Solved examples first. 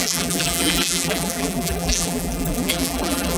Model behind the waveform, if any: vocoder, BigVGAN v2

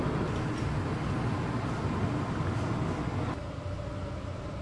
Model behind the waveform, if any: none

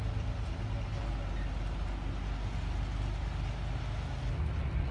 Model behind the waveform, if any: none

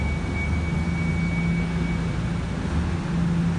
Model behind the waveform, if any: none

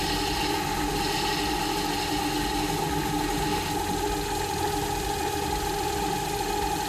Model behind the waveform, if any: none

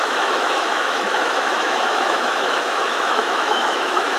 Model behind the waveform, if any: autoencoder, DAC-VAE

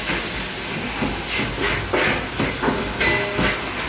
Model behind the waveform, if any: none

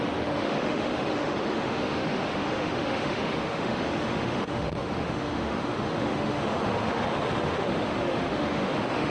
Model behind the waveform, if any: autoencoder, DAC-VAE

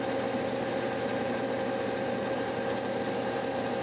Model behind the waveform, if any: none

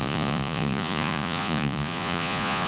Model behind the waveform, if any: vocoder, Vocos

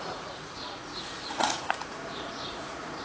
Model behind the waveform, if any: vocoder, Vocos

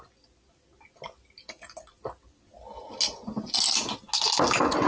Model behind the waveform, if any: none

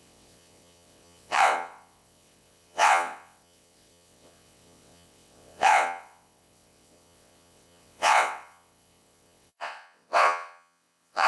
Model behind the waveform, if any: vocoder, WaveNeXt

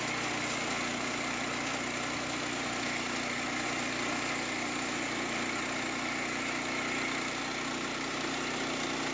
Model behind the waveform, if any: none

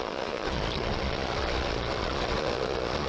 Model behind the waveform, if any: vocoder, Vocos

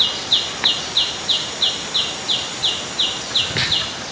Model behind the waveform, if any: none